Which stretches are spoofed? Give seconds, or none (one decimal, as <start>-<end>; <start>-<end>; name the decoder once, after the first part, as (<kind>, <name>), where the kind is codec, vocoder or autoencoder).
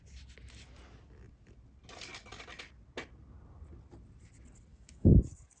4.7-5.6 (codec, DAC)